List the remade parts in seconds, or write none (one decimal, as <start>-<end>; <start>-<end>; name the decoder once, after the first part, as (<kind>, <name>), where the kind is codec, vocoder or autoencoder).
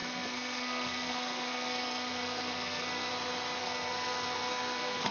0.0-3.1 (codec, SNAC); 3.6-5.1